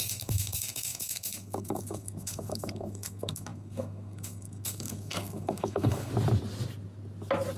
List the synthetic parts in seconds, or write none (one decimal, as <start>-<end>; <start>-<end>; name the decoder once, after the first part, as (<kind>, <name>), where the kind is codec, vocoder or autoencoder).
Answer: 0.0-6.1 (codec, SNAC)